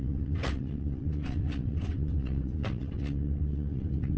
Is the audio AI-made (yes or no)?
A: yes